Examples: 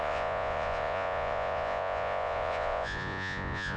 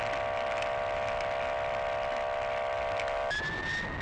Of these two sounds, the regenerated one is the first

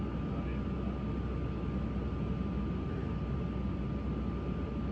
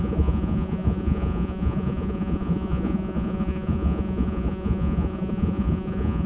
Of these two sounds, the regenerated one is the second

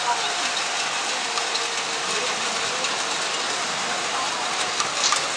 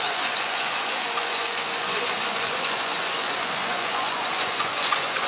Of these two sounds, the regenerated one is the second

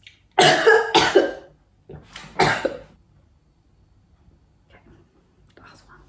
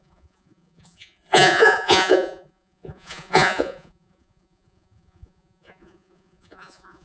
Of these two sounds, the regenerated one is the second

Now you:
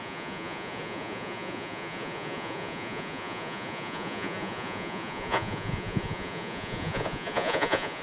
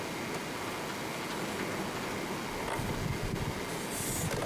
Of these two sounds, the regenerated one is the first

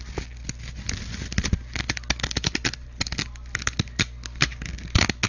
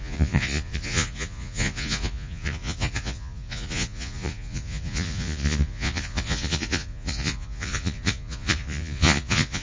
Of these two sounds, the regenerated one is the second